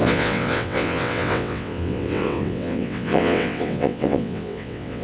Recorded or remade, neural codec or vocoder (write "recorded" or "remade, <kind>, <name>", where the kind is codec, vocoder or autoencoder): remade, vocoder, WaveNeXt